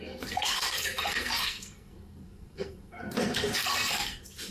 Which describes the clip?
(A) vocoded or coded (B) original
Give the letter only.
A